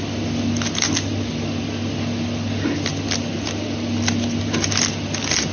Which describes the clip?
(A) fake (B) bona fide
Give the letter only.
B